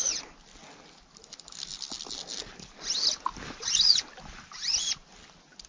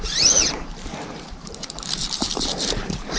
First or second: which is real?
first